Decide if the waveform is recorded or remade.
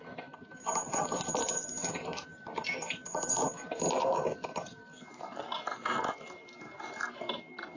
remade